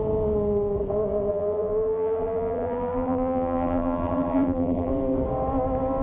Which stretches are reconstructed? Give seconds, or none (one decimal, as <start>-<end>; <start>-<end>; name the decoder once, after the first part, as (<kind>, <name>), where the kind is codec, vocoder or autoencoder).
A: 1.3-4.9 (vocoder, BigVGAN v2)